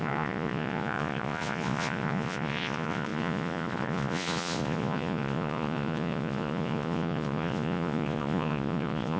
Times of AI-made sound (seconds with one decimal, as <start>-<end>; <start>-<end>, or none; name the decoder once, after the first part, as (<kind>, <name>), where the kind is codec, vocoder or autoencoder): 0.0-9.2 (vocoder, Vocos)

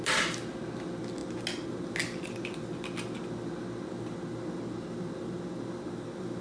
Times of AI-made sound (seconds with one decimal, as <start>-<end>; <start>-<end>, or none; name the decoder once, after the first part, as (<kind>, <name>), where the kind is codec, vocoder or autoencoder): none

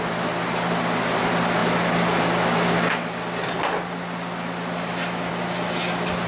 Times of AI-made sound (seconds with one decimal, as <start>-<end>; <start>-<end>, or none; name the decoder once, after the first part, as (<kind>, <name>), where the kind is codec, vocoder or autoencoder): none

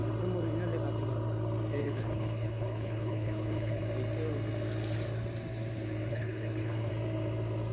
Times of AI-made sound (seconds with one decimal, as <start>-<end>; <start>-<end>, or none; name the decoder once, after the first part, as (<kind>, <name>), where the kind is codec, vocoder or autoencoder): 1.8-3.8 (codec, HILCodec); 6.1-6.9

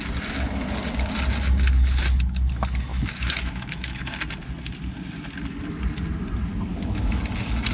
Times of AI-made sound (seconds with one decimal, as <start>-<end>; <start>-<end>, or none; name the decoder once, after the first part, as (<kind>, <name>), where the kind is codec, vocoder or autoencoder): 2.9-4.0 (autoencoder, DAC-VAE); 6.7-7.2